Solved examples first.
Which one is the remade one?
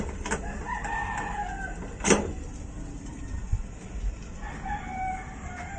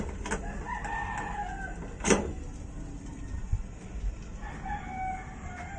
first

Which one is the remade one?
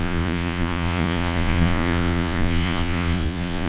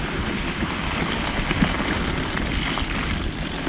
first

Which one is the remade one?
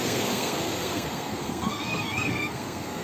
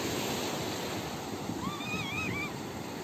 first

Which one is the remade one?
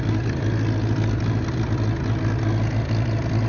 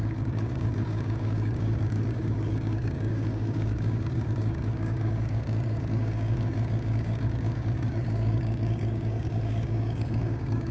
second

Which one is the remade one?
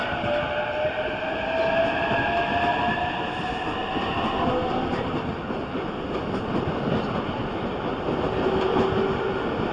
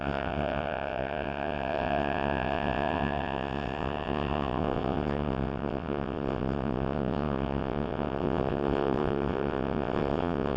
second